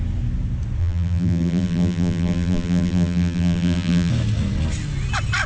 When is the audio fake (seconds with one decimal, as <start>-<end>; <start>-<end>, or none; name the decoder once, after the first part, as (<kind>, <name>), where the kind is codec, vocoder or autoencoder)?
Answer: 0.8-4.1 (vocoder, BigVGAN v2)